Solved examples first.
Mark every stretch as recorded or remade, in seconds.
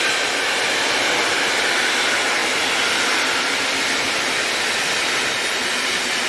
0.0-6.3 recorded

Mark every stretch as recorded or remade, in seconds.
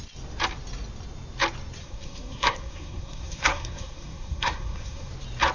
0.0-1.8 recorded; 1.8-5.1 remade; 5.1-5.5 recorded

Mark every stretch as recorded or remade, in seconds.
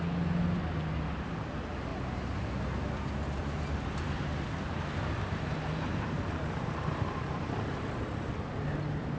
0.0-1.9 recorded; 1.9-2.9 remade; 2.9-3.4 recorded; 3.4-8.0 remade; 8.0-9.2 recorded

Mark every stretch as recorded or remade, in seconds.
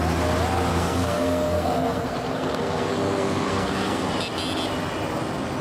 0.0-0.7 recorded; 0.7-4.1 remade; 4.1-5.6 recorded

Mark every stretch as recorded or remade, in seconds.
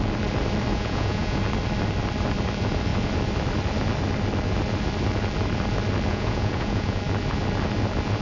0.0-0.7 recorded; 0.7-1.4 remade; 1.4-6.1 recorded; 6.1-7.0 remade; 7.0-8.2 recorded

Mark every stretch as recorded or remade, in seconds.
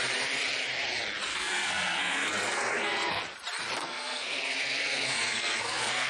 0.0-1.3 recorded; 1.3-3.2 remade; 3.2-3.8 recorded; 3.8-6.1 remade